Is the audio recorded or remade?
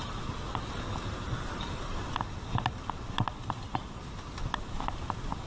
recorded